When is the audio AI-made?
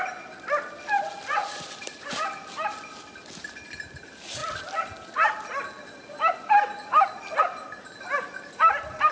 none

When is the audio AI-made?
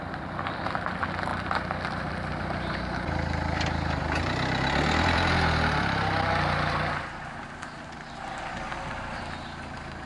0.0-10.1 (vocoder, BigVGAN v2)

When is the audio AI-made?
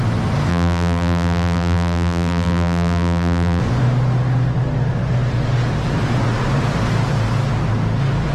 0.5-3.6 (vocoder, BigVGAN v2)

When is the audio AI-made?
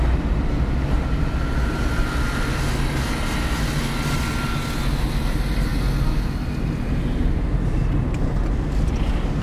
none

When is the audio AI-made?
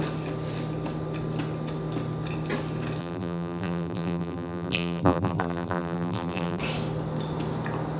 3.0-6.6 (vocoder, BigVGAN v2)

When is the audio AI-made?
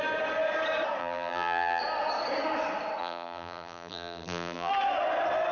1.0-1.8 (vocoder, BigVGAN v2); 3.0-4.7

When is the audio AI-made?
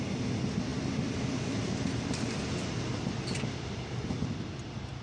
0.7-3.7 (vocoder, BigVGAN v2)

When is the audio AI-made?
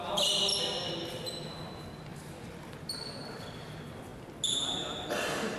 none